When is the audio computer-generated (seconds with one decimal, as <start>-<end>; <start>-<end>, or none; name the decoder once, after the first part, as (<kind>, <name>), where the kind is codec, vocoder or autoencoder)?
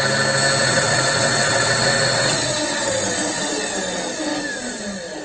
0.6-3.7 (vocoder, WaveNeXt)